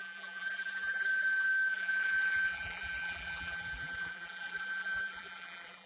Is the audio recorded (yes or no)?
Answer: no